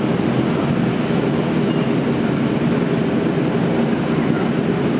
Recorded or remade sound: recorded